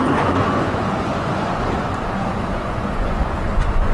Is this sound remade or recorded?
remade